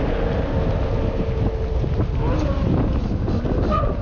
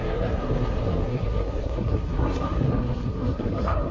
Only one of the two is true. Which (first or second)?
first